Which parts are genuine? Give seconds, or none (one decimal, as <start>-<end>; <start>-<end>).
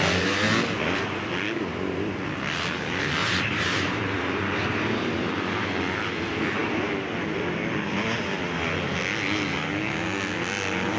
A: 0.0-3.2; 5.1-11.0